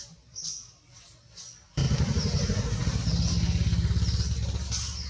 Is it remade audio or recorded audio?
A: recorded